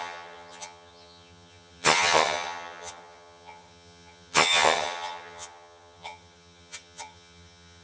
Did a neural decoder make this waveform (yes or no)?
yes